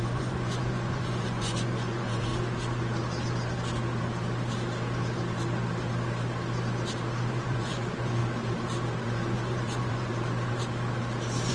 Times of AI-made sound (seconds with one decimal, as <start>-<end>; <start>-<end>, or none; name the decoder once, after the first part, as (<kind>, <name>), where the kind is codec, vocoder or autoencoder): 0.0-2.3 (vocoder, Vocos); 7.3-8.2; 9.0-10.1